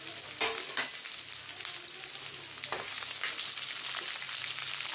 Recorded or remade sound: recorded